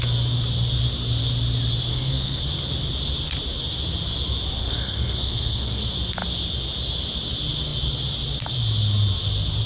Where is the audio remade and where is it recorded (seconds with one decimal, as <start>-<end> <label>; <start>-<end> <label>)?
0.0-1.9 recorded; 1.9-2.4 remade; 2.4-4.6 recorded; 4.6-5.8 remade; 5.8-9.7 recorded